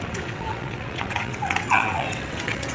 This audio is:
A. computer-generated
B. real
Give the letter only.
A